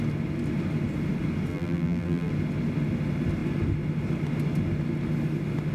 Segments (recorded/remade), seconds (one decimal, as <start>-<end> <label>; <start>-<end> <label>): 0.0-1.5 recorded; 1.5-2.3 remade; 2.3-5.7 recorded